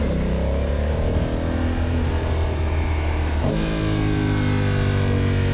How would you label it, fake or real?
real